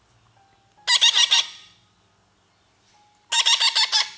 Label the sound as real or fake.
real